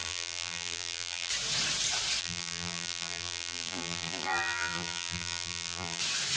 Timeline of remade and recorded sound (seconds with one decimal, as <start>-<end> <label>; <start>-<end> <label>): 0.0-1.3 remade; 1.3-2.2 recorded; 2.2-6.0 remade; 6.0-6.4 recorded